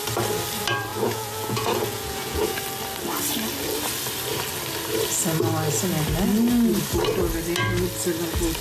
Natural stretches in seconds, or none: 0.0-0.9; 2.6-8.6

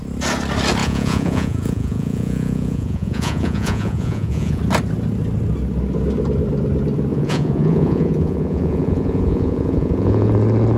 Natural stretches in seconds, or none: 0.0-0.8; 4.6-7.1; 10.3-10.8

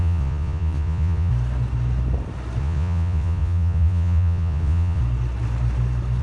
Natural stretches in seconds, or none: 1.3-2.6; 5.0-6.2

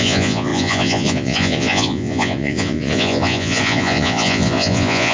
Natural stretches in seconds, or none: none

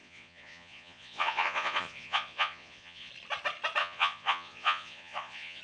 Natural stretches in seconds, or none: 3.1-3.8

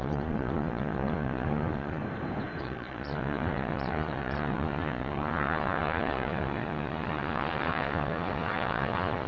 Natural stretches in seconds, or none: 2.0-2.6